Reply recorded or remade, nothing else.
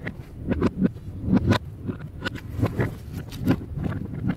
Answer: recorded